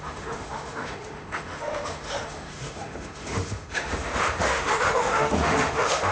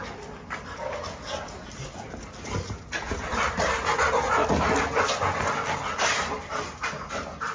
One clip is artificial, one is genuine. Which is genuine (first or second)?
second